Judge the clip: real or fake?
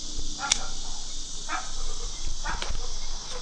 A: real